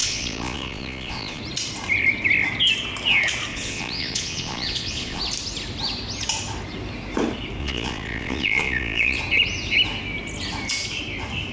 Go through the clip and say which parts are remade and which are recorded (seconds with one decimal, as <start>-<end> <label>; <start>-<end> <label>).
0.0-1.4 remade; 1.4-3.5 recorded; 3.5-5.2 remade; 5.2-7.6 recorded; 7.6-9.2 remade; 9.2-11.5 recorded